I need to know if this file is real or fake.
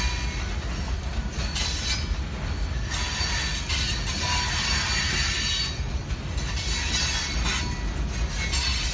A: real